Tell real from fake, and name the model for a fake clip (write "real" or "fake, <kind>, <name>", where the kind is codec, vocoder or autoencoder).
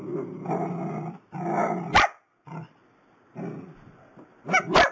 real